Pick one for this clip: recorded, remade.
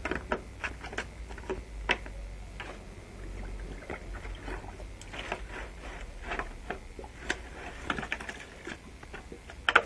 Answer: recorded